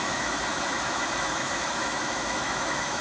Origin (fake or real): fake